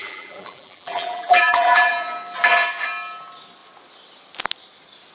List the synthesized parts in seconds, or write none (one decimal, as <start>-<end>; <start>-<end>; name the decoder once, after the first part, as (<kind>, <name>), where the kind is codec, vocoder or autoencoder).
0.0-1.9 (vocoder, BigVGAN v2)